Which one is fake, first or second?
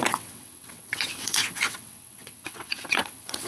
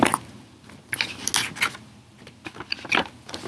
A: first